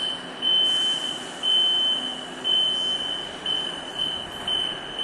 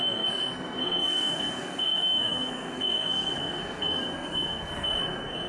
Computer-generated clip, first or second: second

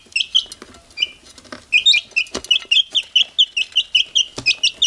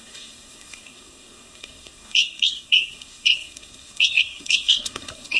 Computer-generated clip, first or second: second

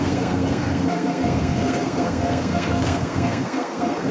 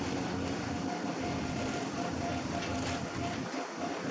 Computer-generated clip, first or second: first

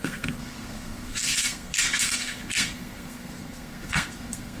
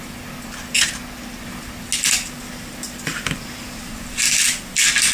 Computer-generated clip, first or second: first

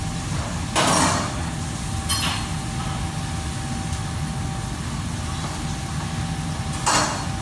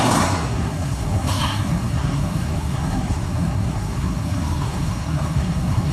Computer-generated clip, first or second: second